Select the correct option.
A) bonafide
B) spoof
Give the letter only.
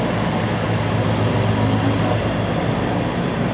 A